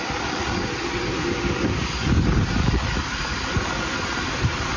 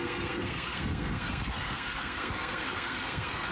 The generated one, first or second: second